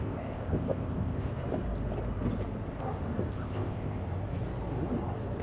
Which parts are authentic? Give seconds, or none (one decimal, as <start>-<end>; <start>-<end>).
1.3-3.3; 4.0-5.4